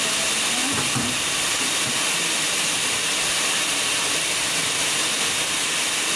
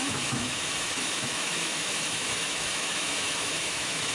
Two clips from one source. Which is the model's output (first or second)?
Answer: second